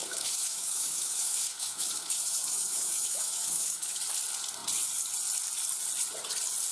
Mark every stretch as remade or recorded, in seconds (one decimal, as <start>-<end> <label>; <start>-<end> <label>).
0.0-4.0 remade; 4.0-6.7 recorded